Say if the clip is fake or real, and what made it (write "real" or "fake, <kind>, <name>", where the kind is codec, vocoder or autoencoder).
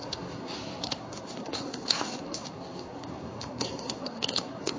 fake, codec, SNAC